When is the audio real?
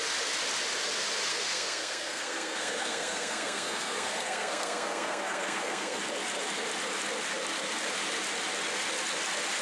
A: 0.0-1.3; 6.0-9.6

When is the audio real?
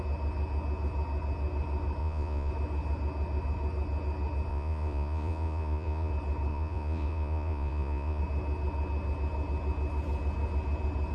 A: 0.0-2.0; 2.5-4.5; 6.1-6.5; 8.2-11.1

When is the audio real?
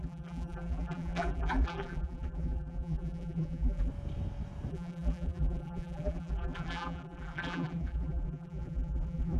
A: 3.9-4.7